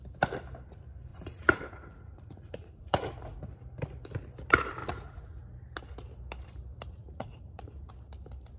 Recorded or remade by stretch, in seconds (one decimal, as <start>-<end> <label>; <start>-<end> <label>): 0.0-1.1 recorded; 1.1-3.5 remade; 3.5-4.8 recorded; 4.8-5.4 remade; 5.4-7.0 recorded; 7.0-7.9 remade; 7.9-8.6 recorded